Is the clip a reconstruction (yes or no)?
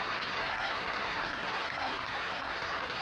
yes